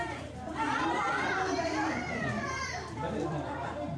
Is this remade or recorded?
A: remade